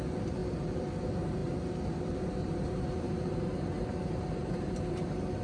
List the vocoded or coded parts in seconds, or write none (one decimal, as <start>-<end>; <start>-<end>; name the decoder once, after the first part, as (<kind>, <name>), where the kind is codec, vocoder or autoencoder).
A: 0.4-0.9 (vocoder, BigVGAN v2); 2.4-4.8